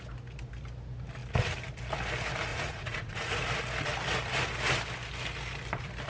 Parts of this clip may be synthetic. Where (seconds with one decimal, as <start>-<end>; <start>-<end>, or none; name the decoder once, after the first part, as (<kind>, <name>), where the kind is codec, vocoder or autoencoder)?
2.5-3.5 (vocoder, Vocos)